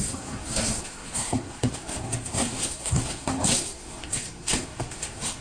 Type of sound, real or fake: fake